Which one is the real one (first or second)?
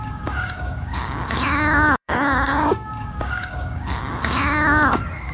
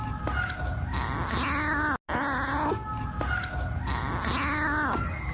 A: second